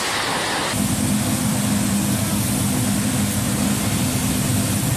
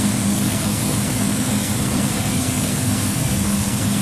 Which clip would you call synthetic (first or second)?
second